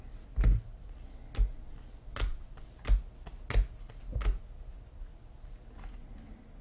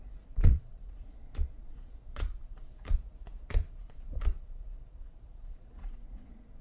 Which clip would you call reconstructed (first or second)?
second